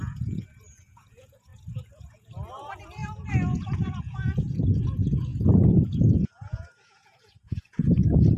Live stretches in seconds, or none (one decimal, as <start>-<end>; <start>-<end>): none